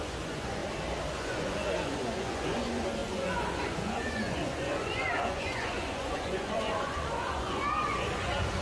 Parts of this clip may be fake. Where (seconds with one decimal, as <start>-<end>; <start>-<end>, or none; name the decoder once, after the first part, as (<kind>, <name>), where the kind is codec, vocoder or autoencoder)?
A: 0.0-0.6 (vocoder, Vocos); 1.1-8.6

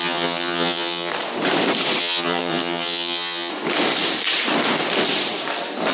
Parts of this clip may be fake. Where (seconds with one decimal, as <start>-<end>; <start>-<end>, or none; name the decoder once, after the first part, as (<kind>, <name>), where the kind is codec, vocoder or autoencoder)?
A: 0.0-1.1 (vocoder, HiFi-GAN); 2.0-3.5

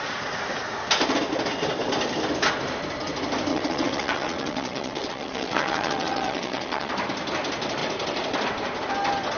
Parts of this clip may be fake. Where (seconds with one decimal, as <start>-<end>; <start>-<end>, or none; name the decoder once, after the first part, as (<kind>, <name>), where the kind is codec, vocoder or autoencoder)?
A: 3.5-6.9 (vocoder, WaveNeXt)

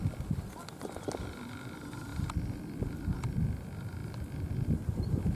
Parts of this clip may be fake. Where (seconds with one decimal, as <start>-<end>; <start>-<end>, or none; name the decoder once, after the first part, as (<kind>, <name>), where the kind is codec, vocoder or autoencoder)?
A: none